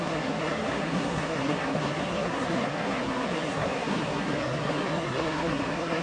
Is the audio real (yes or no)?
no